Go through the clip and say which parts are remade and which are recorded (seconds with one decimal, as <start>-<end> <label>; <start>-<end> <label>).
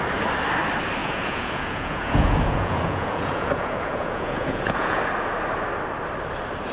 0.0-1.0 recorded; 1.0-5.0 remade; 5.0-6.7 recorded